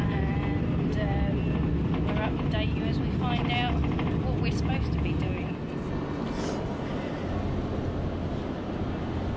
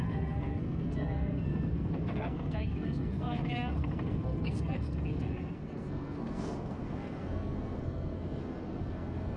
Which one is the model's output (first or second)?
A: second